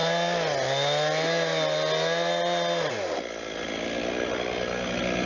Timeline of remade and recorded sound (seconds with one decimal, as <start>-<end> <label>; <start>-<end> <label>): 0.0-5.2 recorded